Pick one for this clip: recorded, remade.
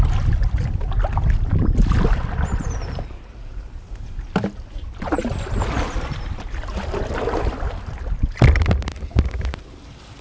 recorded